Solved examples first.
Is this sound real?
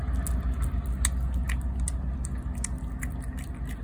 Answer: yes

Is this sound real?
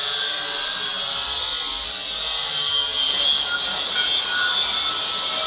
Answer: yes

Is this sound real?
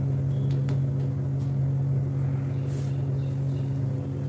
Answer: yes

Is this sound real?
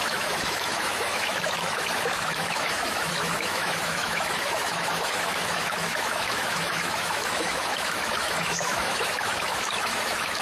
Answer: no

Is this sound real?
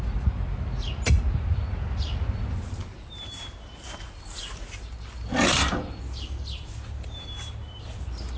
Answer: yes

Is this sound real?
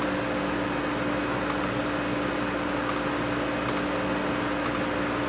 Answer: yes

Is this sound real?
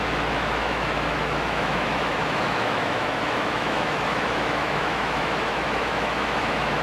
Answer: no